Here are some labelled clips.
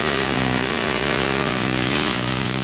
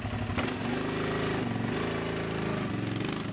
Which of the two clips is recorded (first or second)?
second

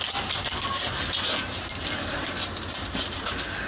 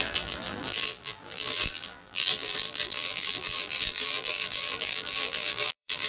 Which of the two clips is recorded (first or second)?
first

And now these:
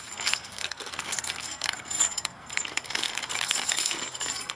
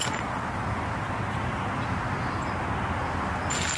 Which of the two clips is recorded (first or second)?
second